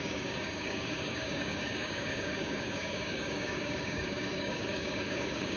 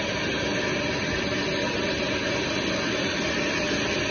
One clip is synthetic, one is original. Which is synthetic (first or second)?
first